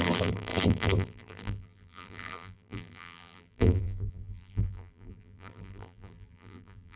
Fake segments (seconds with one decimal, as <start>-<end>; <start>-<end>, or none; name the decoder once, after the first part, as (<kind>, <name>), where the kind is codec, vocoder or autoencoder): 0.0-7.0 (vocoder, BigVGAN v2)